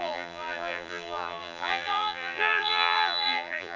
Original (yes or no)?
no